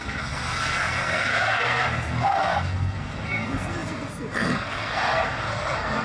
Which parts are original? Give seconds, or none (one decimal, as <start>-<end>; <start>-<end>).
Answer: none